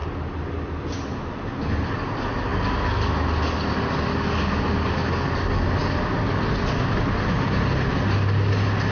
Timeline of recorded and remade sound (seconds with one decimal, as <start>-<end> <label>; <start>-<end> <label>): 0.0-8.9 recorded

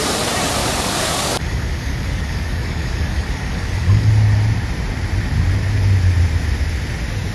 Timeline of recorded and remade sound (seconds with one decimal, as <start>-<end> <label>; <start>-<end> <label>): 0.0-0.6 recorded; 0.6-4.1 remade; 4.1-7.3 recorded

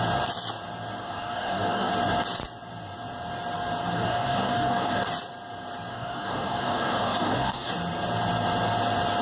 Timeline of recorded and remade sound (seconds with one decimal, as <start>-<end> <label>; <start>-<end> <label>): 0.0-1.0 recorded; 1.0-1.9 remade; 1.9-3.8 recorded; 3.8-5.1 remade; 5.1-5.9 recorded; 5.9-7.7 remade; 7.7-9.2 recorded

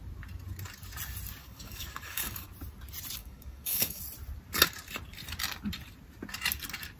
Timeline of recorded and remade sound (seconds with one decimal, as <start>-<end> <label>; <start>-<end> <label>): 0.0-1.4 recorded; 1.4-2.5 remade; 2.5-3.2 recorded; 3.2-4.0 remade; 4.0-7.0 recorded